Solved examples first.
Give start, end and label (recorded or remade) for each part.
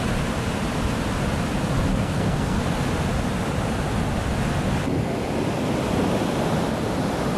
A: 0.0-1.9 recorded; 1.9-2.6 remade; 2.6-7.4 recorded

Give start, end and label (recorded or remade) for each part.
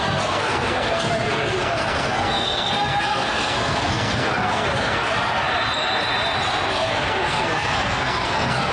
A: 0.0-5.1 remade; 5.1-6.7 recorded; 6.7-8.7 remade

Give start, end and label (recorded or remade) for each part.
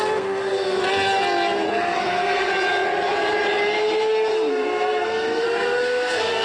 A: 0.0-0.8 remade; 0.8-1.7 recorded; 1.7-2.5 remade; 2.5-4.5 recorded; 4.5-6.4 remade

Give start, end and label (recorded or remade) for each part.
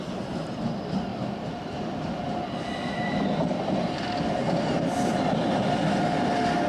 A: 0.0-6.7 recorded